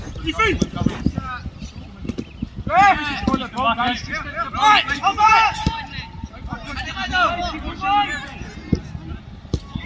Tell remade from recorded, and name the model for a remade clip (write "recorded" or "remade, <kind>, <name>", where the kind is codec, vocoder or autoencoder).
recorded